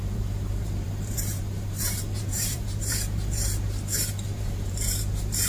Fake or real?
fake